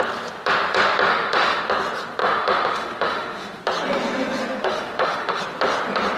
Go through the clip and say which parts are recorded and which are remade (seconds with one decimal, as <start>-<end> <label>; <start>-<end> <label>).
0.0-1.1 recorded; 1.1-1.6 remade; 1.6-2.2 recorded; 2.2-3.6 remade; 3.6-4.4 recorded; 4.4-5.4 remade; 5.4-6.2 recorded